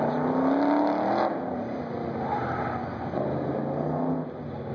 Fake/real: real